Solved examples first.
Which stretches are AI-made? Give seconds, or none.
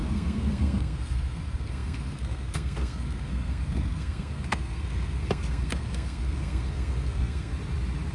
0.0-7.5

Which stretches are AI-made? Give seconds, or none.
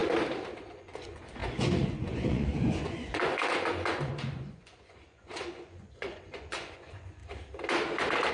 0.6-7.2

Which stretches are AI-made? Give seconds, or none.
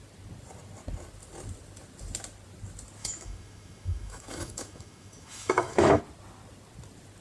3.0-6.0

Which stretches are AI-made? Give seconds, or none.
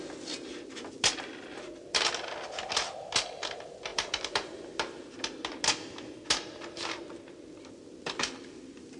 none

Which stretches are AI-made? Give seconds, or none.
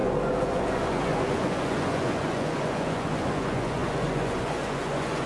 0.0-5.3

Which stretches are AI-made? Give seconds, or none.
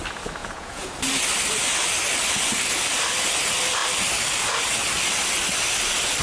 0.4-0.9